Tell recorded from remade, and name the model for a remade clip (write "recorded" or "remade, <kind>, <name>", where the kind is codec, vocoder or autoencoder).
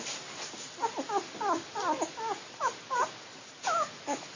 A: recorded